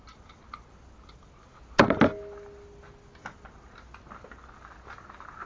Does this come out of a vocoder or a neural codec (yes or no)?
no